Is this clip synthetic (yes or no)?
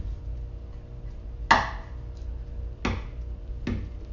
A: no